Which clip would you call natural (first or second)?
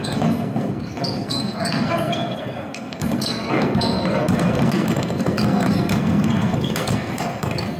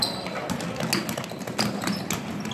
second